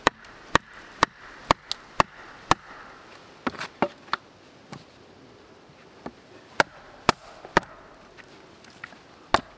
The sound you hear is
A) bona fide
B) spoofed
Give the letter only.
A